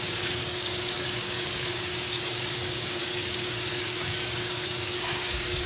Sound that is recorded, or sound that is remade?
remade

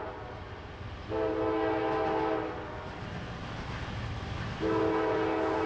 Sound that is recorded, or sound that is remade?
recorded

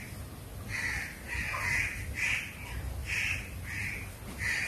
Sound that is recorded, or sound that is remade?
recorded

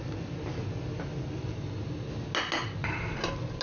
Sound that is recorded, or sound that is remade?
recorded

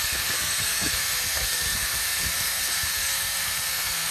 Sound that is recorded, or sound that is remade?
remade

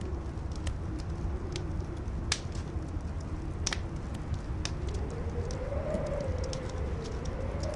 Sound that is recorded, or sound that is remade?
recorded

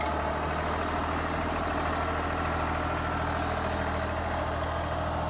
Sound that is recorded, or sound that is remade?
recorded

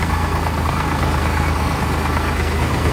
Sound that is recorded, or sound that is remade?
remade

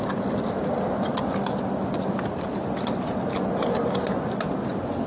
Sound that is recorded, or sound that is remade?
recorded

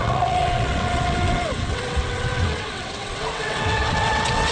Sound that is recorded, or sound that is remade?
remade